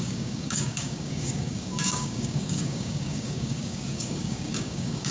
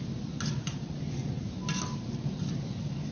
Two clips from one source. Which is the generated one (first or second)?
first